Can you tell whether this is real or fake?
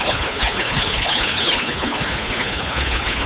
fake